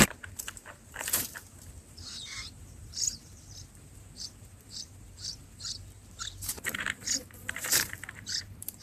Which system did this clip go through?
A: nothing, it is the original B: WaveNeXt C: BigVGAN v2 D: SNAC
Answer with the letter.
C